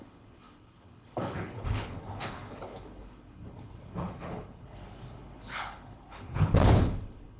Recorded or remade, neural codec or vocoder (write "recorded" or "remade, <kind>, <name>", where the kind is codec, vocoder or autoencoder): remade, codec, HILCodec